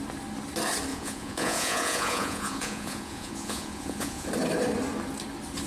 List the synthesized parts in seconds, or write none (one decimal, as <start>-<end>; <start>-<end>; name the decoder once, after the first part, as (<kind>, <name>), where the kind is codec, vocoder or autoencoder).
0.9-4.3 (vocoder, Vocos)